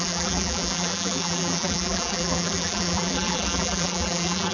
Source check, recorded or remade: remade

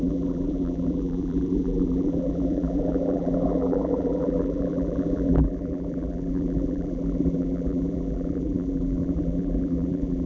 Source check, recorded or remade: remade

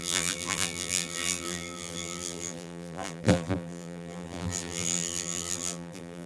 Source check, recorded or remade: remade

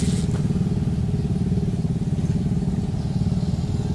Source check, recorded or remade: recorded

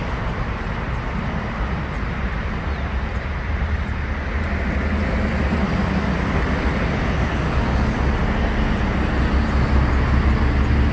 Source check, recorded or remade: recorded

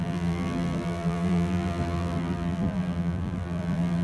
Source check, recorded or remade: remade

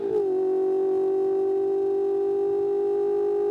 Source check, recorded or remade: recorded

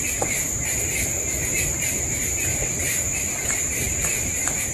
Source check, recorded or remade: remade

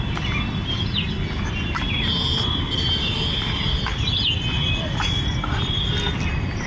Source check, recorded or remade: recorded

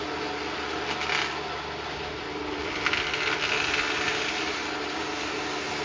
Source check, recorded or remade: recorded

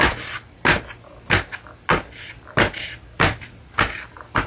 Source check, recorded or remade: recorded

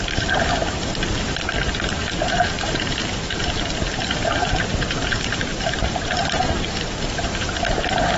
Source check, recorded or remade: remade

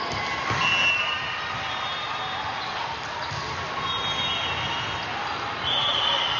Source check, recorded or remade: recorded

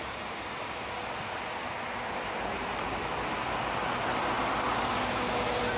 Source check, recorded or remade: recorded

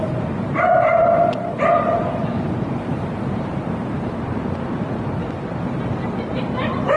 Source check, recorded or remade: remade